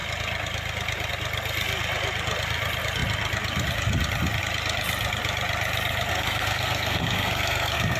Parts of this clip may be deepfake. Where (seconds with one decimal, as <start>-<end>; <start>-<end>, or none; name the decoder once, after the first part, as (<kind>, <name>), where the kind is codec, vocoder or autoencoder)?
6.1-8.0 (codec, SNAC)